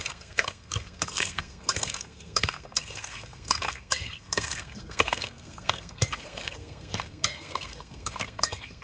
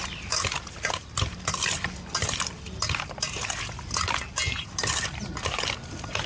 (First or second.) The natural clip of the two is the second